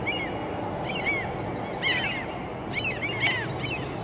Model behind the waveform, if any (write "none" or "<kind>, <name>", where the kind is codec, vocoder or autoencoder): none